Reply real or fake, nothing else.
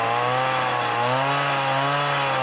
real